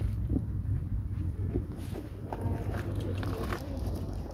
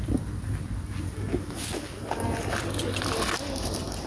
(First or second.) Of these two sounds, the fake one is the first